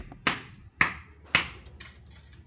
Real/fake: real